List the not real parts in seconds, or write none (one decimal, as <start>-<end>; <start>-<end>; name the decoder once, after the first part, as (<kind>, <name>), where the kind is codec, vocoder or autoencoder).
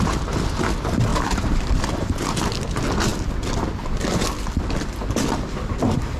1.1-1.8 (vocoder, BigVGAN v2)